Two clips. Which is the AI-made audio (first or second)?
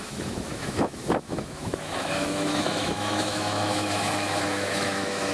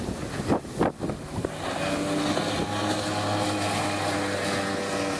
first